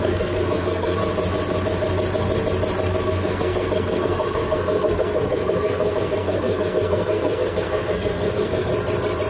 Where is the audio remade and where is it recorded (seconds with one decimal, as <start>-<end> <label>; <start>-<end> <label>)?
0.0-1.0 remade; 1.0-3.0 recorded; 3.0-8.7 remade; 8.7-9.3 recorded